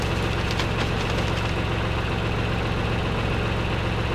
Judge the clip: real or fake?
real